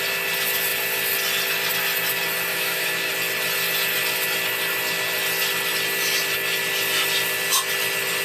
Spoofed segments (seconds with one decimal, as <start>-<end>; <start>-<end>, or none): 2.5-3.1